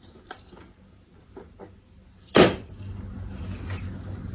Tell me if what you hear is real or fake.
real